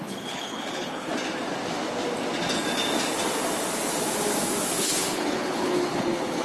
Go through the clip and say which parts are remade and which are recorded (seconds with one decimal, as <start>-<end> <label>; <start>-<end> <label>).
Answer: 0.0-1.1 remade; 1.1-4.7 recorded; 4.7-6.4 remade